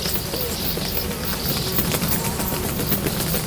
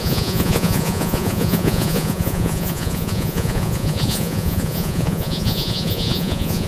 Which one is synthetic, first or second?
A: second